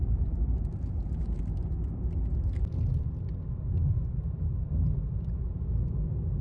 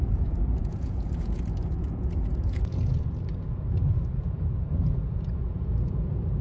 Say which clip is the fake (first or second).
second